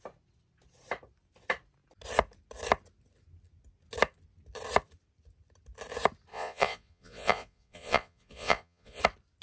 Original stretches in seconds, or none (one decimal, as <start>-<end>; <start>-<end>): 0.0-6.3; 9.0-9.4